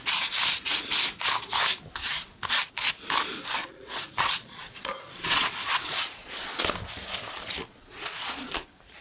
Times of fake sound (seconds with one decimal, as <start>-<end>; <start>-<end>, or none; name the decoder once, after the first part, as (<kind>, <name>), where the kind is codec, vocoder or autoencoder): 2.0-2.7 (vocoder, Vocos); 3.6-6.6; 7.6-8.5